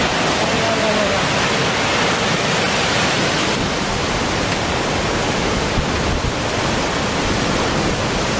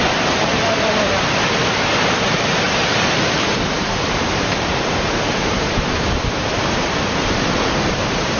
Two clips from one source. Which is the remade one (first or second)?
second